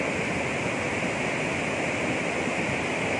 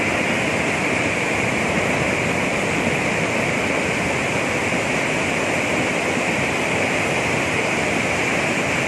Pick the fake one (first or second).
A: second